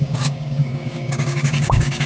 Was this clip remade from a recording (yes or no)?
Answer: yes